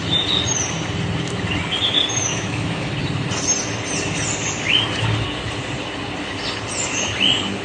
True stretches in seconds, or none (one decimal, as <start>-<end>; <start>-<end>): 0.0-2.3; 2.9-7.6